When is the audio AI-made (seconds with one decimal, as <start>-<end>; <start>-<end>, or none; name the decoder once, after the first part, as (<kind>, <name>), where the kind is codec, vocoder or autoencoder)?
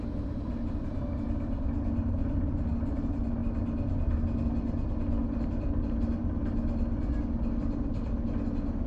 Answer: none